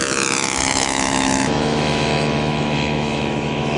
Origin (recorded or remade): remade